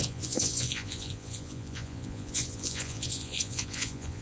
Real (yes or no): no